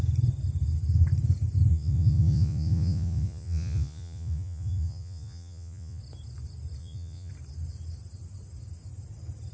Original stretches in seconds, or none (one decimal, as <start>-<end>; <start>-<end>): 0.0-1.7; 6.0-6.8; 7.3-9.5